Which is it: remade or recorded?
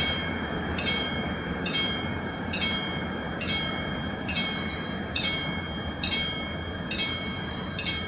remade